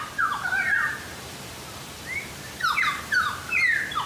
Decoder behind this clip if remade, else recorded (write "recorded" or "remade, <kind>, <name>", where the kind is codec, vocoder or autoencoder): remade, vocoder, BigVGAN v2